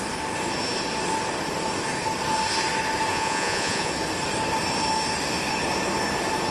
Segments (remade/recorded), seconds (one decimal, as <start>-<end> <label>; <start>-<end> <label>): 0.0-3.1 recorded; 3.1-3.9 remade; 3.9-6.5 recorded